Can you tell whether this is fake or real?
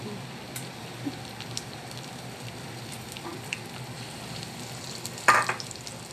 fake